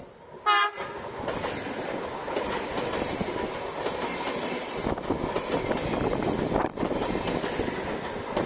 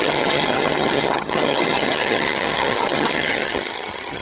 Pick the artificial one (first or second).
second